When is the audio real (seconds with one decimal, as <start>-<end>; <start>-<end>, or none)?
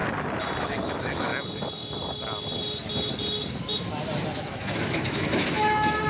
0.0-0.6; 1.3-4.5